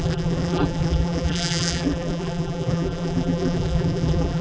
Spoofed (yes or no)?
yes